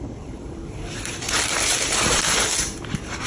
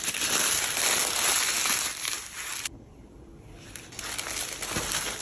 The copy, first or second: first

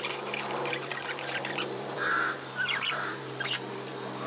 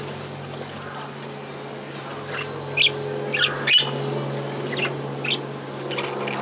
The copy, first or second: first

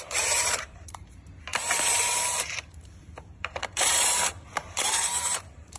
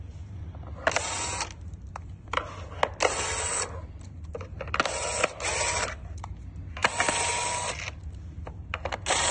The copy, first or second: first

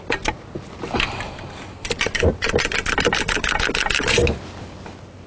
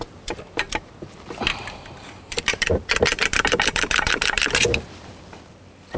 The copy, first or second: second